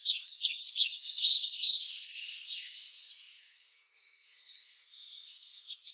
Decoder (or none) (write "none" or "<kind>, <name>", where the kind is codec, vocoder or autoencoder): codec, SNAC